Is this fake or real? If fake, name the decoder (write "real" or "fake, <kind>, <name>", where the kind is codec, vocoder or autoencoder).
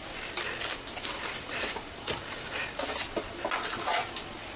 real